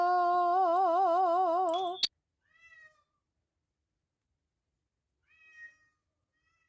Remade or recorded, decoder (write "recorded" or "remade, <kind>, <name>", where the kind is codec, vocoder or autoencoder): recorded